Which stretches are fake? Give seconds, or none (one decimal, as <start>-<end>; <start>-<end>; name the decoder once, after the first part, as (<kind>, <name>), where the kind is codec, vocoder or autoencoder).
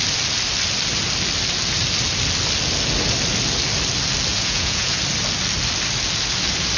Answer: 4.3-5.0 (vocoder, Vocos)